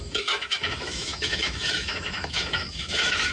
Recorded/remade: remade